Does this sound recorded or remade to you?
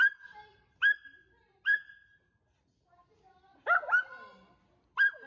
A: recorded